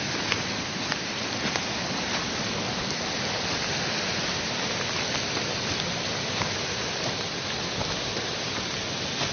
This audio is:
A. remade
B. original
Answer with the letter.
B